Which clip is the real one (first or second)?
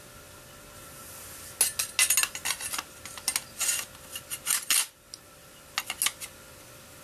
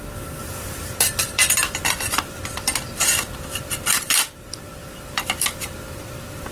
first